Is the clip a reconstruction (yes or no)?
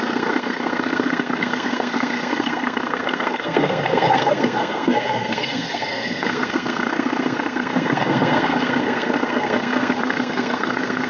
yes